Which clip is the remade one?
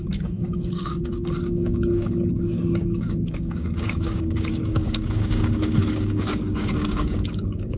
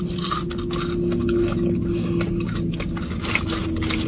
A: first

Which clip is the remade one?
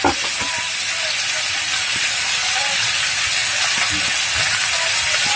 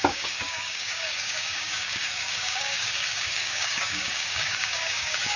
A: second